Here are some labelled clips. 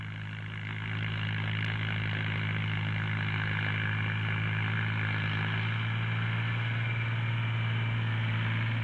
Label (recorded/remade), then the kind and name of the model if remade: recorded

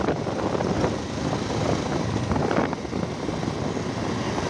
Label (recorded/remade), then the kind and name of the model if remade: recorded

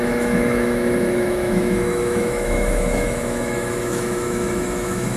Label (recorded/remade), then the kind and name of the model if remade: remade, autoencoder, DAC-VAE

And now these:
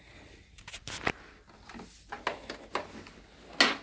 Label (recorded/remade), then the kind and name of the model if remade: recorded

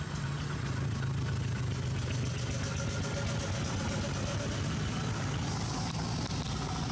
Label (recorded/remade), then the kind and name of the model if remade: recorded